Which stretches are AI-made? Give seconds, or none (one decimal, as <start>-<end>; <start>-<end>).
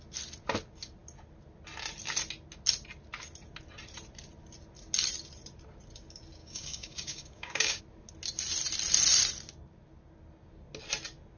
6.4-7.8